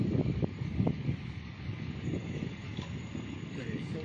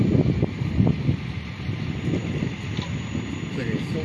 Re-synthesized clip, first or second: first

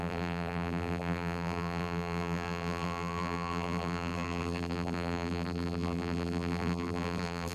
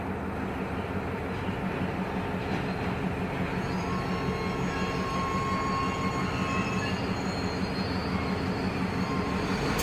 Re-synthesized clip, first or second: first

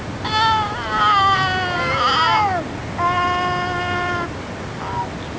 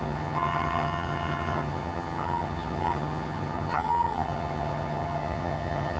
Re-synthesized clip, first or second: second